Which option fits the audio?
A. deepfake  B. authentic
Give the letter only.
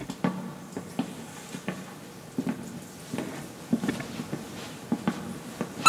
B